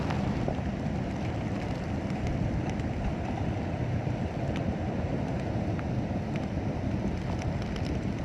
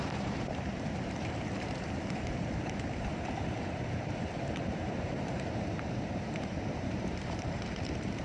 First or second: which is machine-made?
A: second